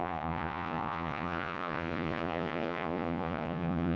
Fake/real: fake